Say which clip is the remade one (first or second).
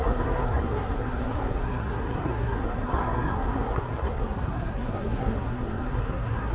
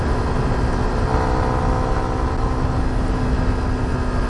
first